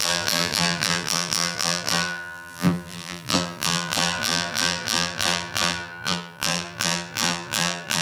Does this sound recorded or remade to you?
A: remade